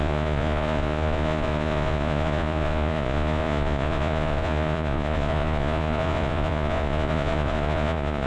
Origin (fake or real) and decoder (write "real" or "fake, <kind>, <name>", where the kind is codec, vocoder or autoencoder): fake, vocoder, Vocos